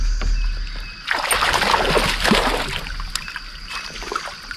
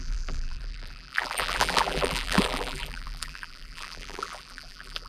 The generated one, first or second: second